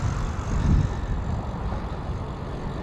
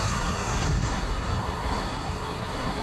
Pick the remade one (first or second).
second